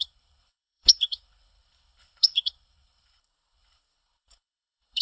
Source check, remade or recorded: remade